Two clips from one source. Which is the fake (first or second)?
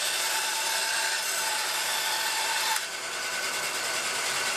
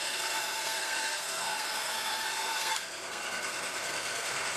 second